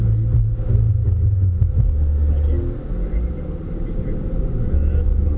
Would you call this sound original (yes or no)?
yes